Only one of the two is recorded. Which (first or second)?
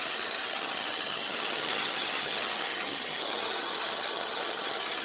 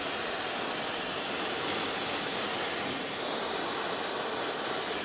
second